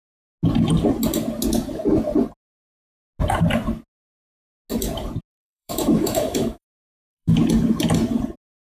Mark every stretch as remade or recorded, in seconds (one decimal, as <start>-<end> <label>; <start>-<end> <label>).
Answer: 0.0-5.3 recorded; 5.3-7.4 remade; 7.4-8.8 recorded